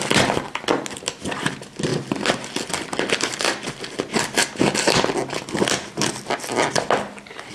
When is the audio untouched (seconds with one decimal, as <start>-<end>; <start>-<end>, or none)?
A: 0.0-7.5

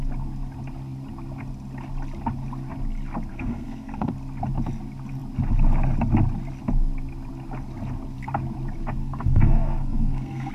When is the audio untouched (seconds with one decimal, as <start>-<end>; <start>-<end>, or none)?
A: 0.0-3.3; 4.1-9.0

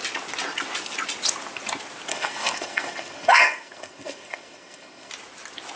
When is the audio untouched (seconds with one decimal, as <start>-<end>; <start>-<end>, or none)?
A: 0.0-2.1; 5.1-5.8

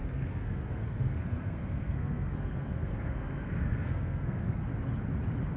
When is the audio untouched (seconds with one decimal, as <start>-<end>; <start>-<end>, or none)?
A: 4.7-5.6

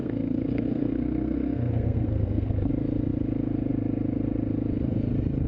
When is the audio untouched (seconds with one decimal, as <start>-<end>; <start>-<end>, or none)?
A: 2.7-5.5